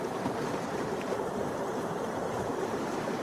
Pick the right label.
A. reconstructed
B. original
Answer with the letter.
A